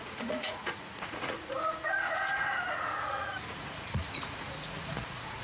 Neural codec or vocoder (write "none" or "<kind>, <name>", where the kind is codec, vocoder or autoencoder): vocoder, Vocos